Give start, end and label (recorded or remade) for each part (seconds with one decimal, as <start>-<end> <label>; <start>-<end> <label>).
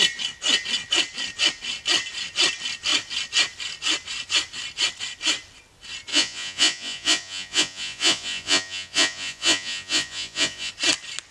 0.0-6.1 recorded; 6.1-10.7 remade; 10.7-11.3 recorded